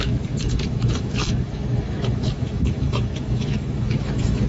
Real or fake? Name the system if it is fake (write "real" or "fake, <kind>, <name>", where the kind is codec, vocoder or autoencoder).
fake, autoencoder, DAC-VAE